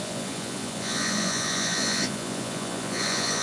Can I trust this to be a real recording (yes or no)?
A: no